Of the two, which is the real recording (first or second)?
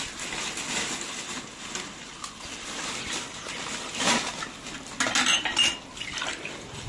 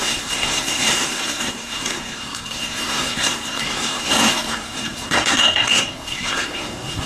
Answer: first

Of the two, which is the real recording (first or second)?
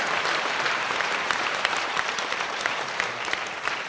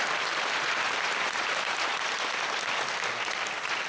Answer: second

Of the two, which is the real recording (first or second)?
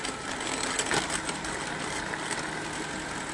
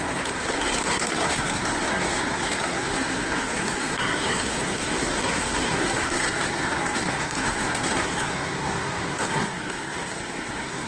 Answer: first